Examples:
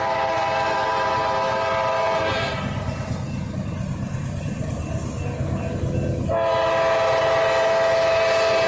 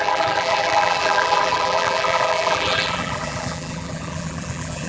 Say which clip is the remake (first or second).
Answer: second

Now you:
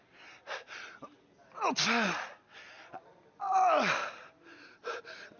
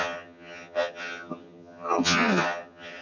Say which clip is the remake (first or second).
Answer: second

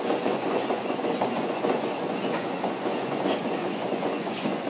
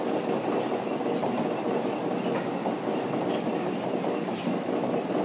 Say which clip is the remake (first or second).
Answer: first